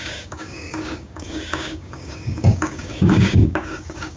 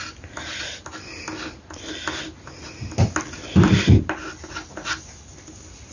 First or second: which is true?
second